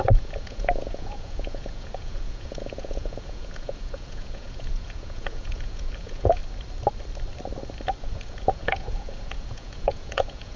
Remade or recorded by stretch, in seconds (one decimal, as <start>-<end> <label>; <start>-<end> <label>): 0.0-6.4 remade; 6.4-8.0 recorded; 8.0-10.6 remade